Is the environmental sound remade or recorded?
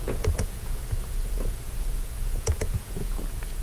remade